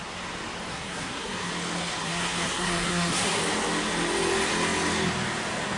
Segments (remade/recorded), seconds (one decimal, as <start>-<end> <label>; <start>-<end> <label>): 0.0-0.7 recorded; 0.7-1.5 remade; 1.5-2.0 recorded; 2.0-3.4 remade; 3.4-5.8 recorded